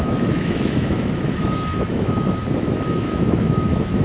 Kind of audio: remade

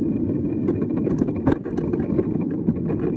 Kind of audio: recorded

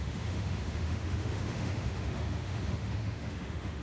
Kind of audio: remade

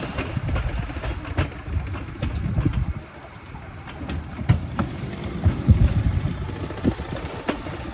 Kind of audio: recorded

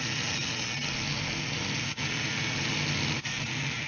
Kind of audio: recorded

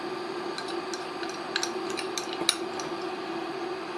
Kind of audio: recorded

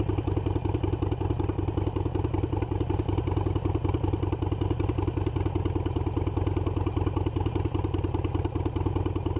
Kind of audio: recorded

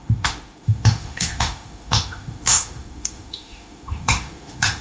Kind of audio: remade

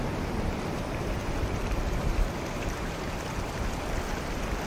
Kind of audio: recorded